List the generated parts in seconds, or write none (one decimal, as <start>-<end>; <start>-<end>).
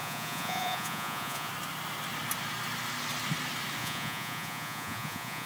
0.0-1.5; 3.8-5.5